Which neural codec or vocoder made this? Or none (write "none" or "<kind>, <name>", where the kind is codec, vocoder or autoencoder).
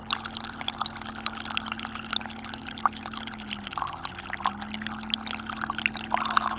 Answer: none